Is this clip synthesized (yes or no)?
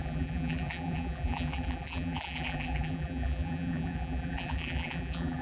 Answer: yes